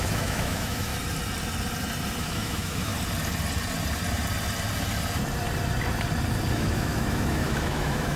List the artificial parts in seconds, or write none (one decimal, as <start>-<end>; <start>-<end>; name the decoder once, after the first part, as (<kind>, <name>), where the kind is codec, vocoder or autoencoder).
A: 0.0-0.9 (autoencoder, DAC-VAE); 2.2-2.9; 6.5-8.2